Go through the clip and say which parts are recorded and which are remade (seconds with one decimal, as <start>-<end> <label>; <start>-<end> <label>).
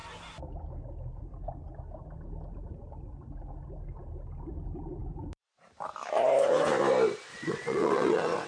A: 0.0-7.3 recorded; 7.3-8.5 remade